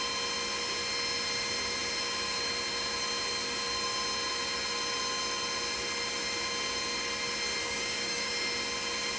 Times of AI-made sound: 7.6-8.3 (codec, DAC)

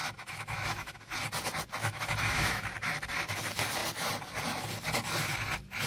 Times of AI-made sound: 0.0-1.1 (autoencoder, DAC-VAE); 1.8-2.7

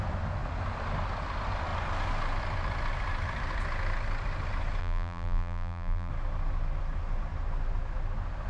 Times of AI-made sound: 4.8-6.1 (vocoder, BigVGAN v2)

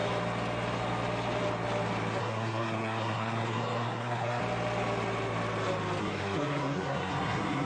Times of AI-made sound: 2.2-4.4 (codec, SNAC); 6.0-7.6

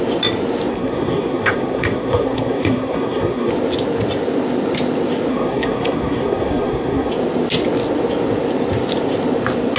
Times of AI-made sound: 0.7-3.5 (codec, SNAC); 5.3-7.1

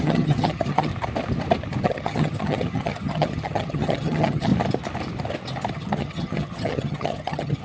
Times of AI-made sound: 0.0-0.9 (vocoder, HiFi-GAN); 1.8-4.5; 5.7-7.6

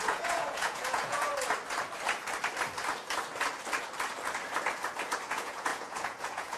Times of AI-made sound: 0.0-1.3 (vocoder, Vocos); 5.3-6.6

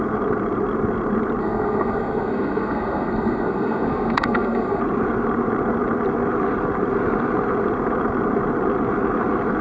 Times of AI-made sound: 1.4-4.8 (codec, SNAC)